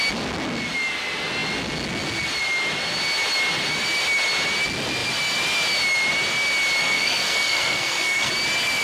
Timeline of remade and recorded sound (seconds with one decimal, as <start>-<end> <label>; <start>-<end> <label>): 0.0-6.8 recorded; 6.8-8.3 remade; 8.3-8.8 recorded

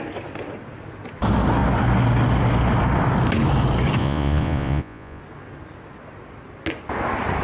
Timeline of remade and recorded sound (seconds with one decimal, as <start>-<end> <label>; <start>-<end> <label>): 0.0-4.0 recorded; 4.0-5.2 remade; 5.2-7.4 recorded

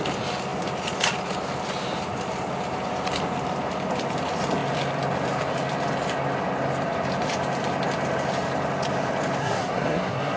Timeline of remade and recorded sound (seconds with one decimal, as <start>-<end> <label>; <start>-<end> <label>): 0.0-9.4 recorded; 9.4-10.4 remade

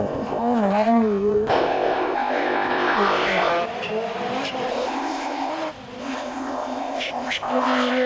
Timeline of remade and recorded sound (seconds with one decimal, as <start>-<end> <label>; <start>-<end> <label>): 0.0-3.5 remade; 3.5-4.7 recorded; 4.7-5.5 remade; 5.5-6.0 recorded; 6.0-8.1 remade